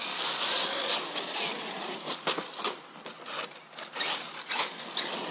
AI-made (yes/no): no